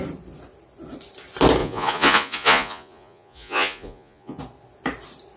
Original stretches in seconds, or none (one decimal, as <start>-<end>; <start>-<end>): 0.0-1.6; 4.4-5.4